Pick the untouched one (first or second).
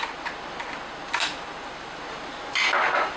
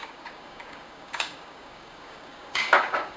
first